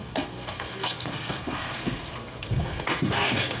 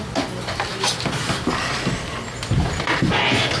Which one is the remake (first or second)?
first